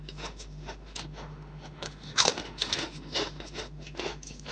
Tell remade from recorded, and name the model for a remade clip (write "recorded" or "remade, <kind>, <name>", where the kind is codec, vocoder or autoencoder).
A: remade, autoencoder, DAC-VAE